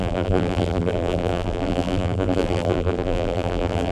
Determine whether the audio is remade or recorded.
remade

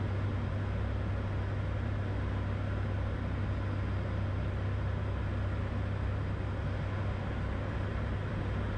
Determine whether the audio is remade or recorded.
recorded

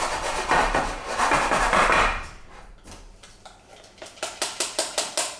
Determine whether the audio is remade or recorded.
recorded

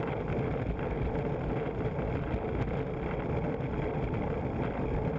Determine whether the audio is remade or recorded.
recorded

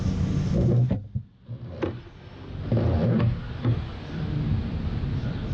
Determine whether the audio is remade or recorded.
recorded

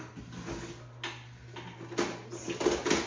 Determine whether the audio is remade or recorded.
recorded